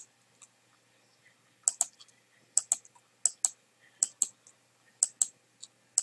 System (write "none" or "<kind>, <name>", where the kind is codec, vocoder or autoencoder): none